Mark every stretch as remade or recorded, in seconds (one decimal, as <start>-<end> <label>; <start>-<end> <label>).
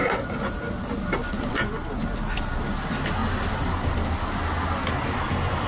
0.0-5.7 recorded